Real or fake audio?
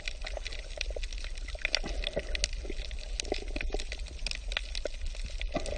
real